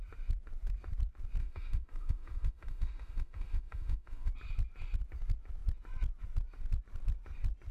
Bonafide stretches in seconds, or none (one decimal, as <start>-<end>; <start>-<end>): 0.0-1.4; 4.3-7.7